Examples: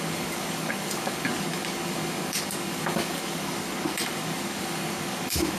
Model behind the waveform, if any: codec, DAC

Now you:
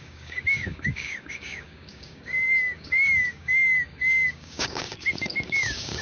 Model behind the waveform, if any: codec, DAC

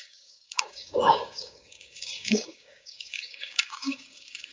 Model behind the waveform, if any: codec, DAC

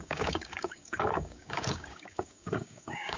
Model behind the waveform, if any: codec, DAC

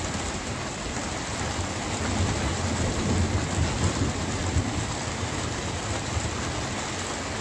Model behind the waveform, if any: none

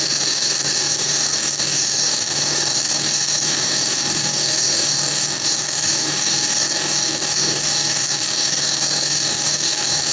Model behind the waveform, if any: codec, DAC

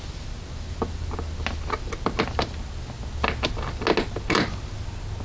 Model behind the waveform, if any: none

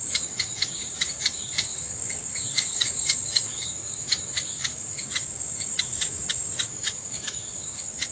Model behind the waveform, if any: codec, DAC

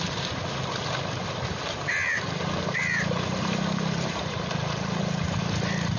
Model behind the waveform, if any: none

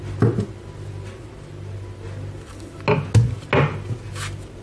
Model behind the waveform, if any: none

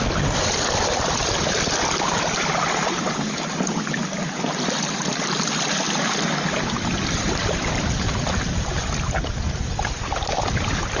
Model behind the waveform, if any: none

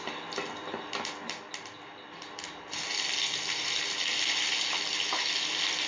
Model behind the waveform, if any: none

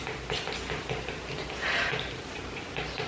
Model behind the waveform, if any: none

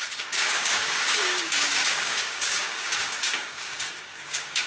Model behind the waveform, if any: codec, DAC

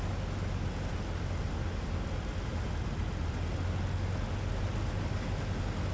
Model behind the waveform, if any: none